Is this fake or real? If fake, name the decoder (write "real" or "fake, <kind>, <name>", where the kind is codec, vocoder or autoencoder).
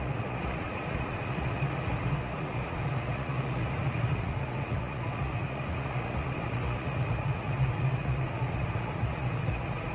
fake, vocoder, Vocos